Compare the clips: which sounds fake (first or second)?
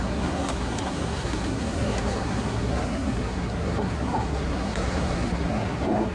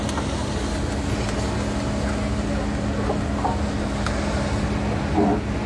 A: first